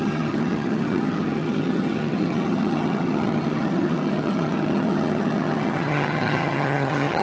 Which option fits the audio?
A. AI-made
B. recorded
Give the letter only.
A